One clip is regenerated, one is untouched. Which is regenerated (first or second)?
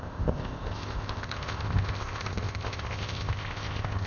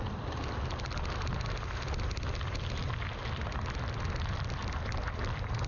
first